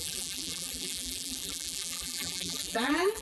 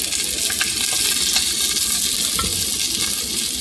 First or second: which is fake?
first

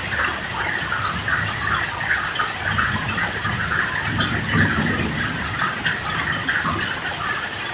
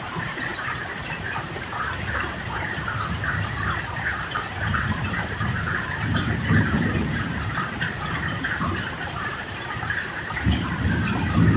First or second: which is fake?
second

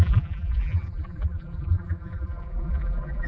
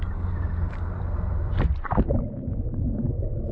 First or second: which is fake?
first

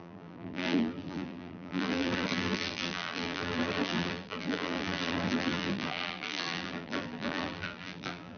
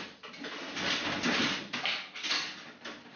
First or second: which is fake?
first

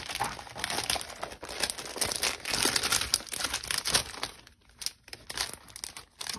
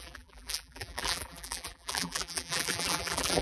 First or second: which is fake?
second